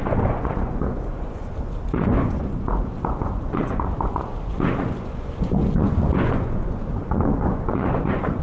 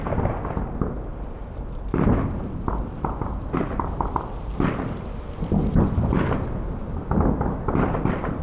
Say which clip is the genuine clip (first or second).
second